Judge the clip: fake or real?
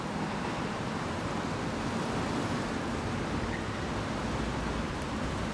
real